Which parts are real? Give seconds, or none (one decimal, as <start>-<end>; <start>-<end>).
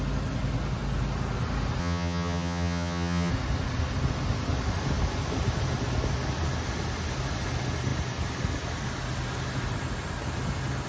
0.0-1.8; 3.3-10.9